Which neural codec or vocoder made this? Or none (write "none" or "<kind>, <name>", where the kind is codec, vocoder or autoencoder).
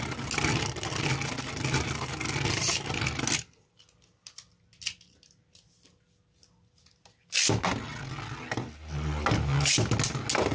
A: none